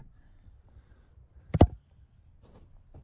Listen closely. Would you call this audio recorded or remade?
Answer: recorded